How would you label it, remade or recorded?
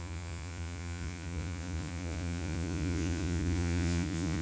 remade